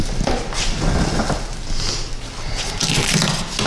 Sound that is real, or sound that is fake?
real